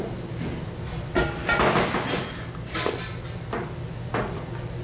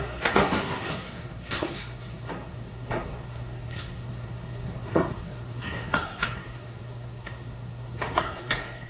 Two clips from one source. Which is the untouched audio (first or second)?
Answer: first